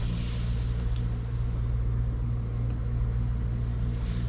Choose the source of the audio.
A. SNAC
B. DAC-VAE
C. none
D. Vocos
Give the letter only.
C